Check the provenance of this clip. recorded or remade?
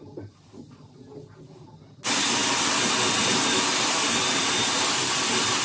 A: recorded